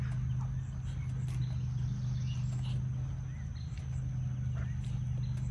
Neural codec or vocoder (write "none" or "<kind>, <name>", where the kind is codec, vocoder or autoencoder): none